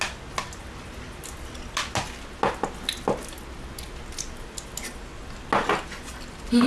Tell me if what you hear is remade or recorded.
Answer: recorded